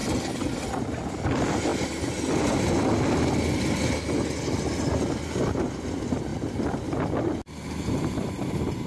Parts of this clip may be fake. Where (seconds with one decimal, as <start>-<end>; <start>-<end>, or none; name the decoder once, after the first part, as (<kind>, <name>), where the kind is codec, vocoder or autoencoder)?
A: none